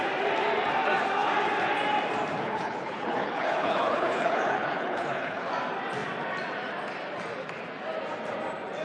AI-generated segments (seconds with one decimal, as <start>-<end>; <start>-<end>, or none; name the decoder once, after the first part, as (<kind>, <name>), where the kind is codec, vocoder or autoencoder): 2.4-5.5 (codec, HILCodec)